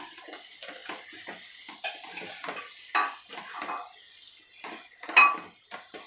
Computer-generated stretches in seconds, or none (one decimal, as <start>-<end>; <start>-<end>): none